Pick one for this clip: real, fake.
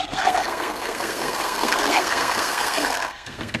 fake